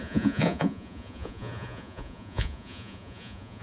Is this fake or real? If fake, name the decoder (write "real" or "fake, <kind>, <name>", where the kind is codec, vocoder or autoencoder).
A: fake, vocoder, Vocos